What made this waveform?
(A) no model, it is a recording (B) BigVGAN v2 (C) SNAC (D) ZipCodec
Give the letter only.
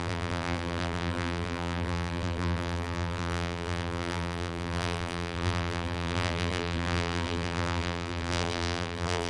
B